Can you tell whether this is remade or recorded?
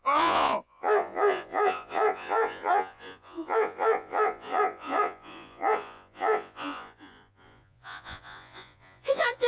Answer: remade